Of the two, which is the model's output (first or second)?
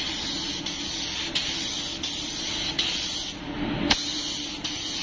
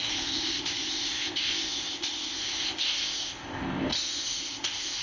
second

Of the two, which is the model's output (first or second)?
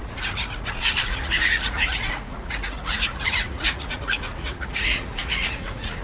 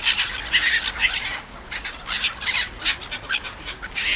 first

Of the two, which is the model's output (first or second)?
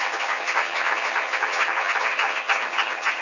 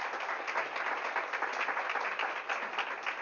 first